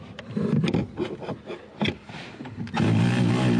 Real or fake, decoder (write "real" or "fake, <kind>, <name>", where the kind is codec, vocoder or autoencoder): real